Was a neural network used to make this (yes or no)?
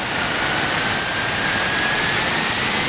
no